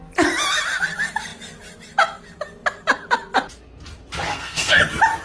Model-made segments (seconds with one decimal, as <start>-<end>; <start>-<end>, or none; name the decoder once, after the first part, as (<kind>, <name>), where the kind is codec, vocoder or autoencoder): 4.3-4.8 (codec, SNAC)